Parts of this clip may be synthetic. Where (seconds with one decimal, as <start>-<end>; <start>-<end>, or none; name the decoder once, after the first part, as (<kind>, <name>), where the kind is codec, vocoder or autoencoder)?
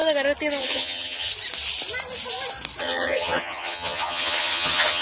0.6-1.3 (vocoder, HiFi-GAN); 2.8-5.0